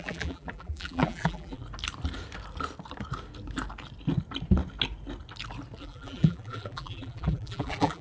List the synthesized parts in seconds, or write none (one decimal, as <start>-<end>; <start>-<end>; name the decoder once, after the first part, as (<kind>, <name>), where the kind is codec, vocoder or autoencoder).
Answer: 0.0-1.6 (vocoder, BigVGAN v2); 5.8-8.0